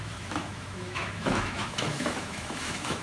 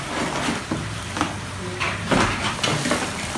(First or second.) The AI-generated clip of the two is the first